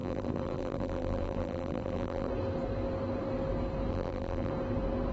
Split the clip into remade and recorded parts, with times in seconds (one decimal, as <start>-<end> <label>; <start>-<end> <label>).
0.0-2.3 remade; 2.3-3.9 recorded; 3.9-4.5 remade; 4.5-5.1 recorded